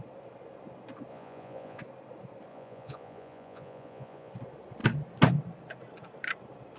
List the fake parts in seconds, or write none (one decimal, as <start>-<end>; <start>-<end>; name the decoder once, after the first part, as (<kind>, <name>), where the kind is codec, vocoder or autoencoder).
1.1-1.8 (vocoder, Vocos); 2.5-4.3